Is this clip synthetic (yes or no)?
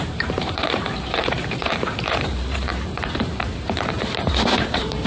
yes